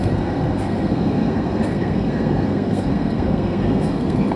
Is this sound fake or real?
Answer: fake